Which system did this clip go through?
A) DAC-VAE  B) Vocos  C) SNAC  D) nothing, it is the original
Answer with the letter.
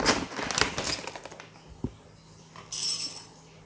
D